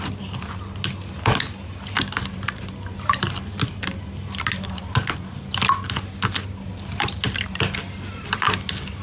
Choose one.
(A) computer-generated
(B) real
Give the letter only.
B